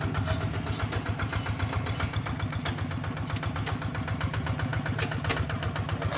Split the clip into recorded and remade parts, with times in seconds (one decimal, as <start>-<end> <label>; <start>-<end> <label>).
0.0-6.2 recorded